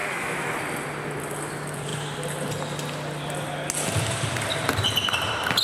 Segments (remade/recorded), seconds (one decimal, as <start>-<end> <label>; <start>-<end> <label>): 0.0-0.6 remade; 0.6-5.6 recorded